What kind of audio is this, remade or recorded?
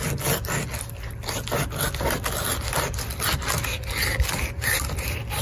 recorded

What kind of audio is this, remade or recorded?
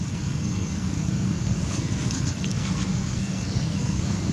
remade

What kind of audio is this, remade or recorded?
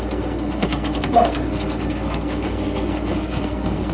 remade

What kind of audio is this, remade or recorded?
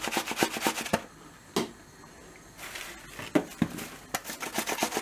recorded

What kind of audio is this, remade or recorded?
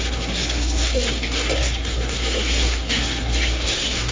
remade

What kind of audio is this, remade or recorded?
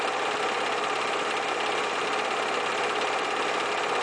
recorded